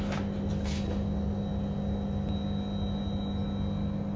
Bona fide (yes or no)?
yes